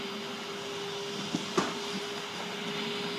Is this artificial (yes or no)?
no